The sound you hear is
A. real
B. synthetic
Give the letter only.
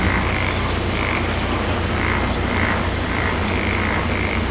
A